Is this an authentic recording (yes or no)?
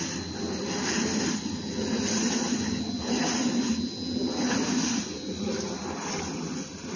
yes